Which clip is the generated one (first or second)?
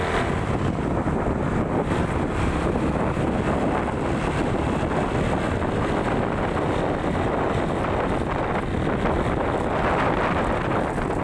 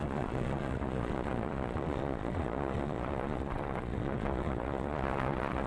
second